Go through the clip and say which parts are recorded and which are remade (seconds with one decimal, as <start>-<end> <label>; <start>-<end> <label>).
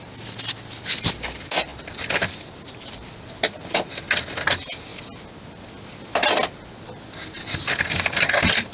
0.0-1.7 recorded; 1.7-3.1 remade; 3.1-8.7 recorded